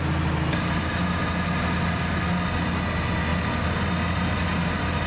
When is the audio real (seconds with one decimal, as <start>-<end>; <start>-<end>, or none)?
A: 0.0-5.1